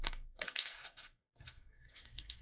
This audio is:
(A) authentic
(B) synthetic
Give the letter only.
B